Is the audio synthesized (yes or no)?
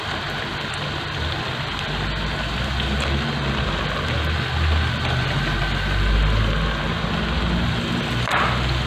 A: no